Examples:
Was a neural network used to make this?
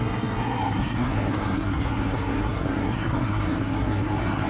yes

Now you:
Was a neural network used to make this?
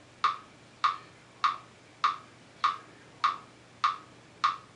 no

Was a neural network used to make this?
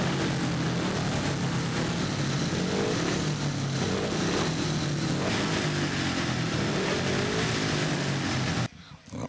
no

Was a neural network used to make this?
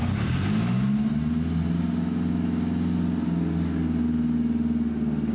no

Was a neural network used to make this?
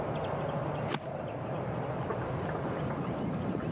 no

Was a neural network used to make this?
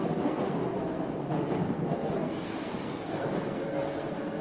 yes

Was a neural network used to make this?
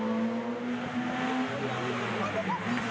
no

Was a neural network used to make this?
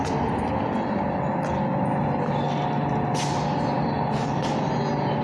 no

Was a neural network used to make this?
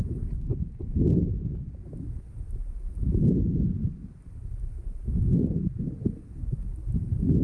no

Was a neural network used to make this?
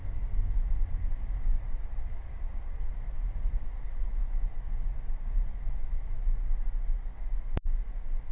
no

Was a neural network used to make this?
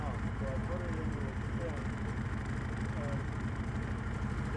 no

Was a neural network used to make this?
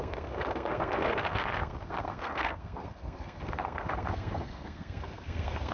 yes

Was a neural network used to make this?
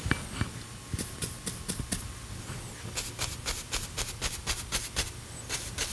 no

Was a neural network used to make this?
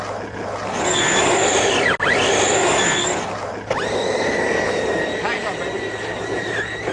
no